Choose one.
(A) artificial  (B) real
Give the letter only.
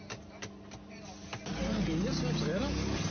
B